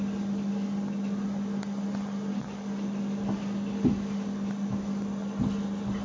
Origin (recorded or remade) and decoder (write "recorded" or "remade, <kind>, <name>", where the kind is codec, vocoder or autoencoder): recorded